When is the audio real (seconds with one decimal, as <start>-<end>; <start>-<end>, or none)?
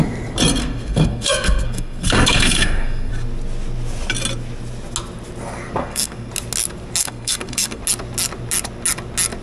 0.0-0.6; 3.1-5.8; 6.3-7.0; 7.8-9.4